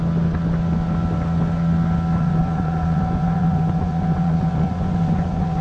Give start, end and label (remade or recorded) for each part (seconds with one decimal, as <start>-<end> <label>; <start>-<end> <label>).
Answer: 0.0-2.2 recorded; 2.2-5.6 remade